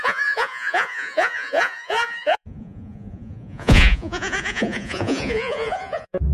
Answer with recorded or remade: remade